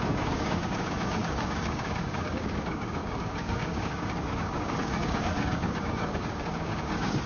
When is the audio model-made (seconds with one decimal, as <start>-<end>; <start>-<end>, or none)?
0.0-7.3